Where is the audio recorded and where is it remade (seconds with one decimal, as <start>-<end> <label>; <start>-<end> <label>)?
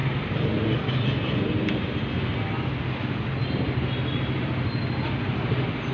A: 0.0-5.9 recorded